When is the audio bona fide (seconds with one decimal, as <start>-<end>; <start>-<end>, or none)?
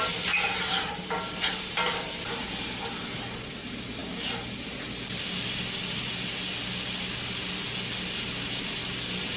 0.0-9.4